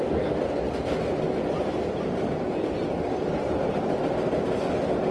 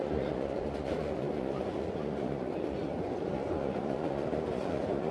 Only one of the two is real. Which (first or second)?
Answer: first